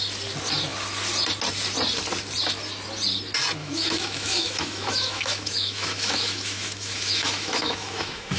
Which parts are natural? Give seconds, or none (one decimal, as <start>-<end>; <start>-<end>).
0.0-3.6